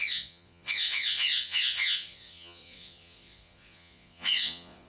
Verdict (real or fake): fake